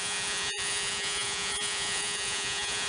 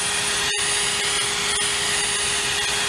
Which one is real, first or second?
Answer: second